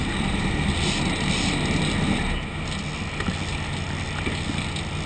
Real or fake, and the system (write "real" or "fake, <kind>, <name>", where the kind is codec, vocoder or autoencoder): real